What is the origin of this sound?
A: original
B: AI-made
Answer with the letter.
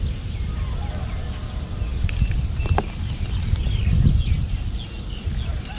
A